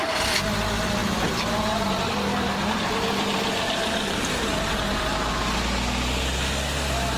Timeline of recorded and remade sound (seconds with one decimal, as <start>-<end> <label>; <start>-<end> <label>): 0.0-1.0 recorded; 1.0-5.3 remade; 5.3-7.2 recorded